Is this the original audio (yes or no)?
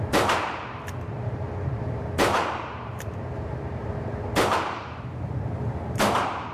no